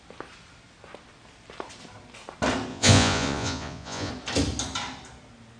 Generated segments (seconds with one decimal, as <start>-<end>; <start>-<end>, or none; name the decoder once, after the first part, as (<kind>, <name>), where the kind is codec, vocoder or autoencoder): 2.7-4.1 (vocoder, Vocos)